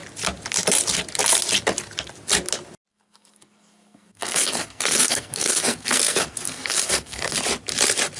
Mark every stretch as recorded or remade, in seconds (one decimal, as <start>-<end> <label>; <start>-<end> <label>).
0.0-2.9 recorded; 2.9-7.4 remade; 7.4-8.2 recorded